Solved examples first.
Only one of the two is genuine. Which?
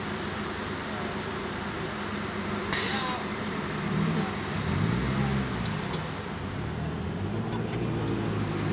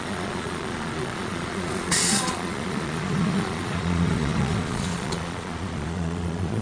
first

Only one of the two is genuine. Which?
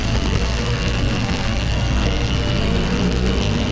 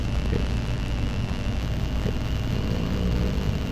second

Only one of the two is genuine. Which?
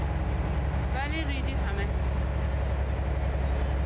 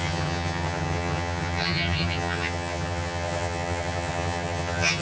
first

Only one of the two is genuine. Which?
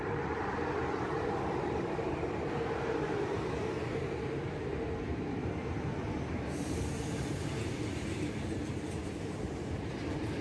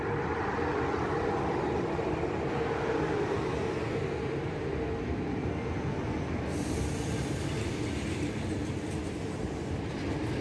second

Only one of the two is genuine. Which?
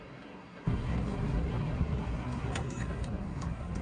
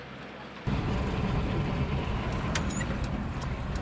second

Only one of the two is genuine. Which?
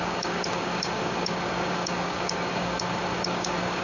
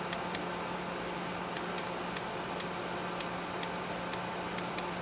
second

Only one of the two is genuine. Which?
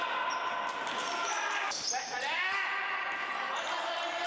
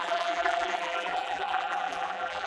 first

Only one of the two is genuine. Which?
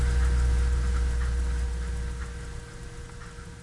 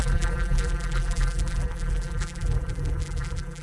first